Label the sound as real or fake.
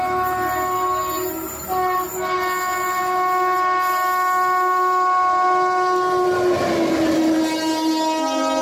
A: real